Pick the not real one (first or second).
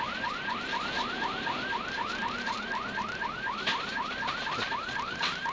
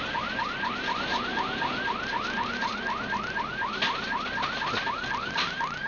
first